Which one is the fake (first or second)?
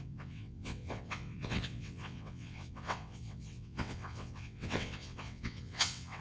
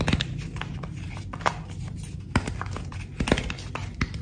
first